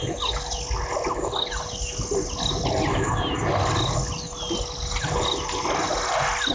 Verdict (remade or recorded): recorded